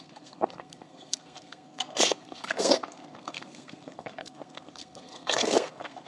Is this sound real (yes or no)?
no